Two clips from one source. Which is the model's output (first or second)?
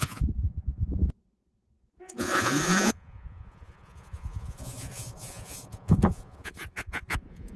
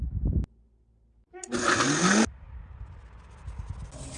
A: first